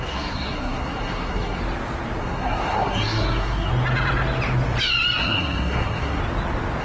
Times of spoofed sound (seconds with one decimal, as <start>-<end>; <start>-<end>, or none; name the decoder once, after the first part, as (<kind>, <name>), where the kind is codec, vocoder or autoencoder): 0.0-1.6 (codec, SNAC); 2.2-3.7; 5.2-6.2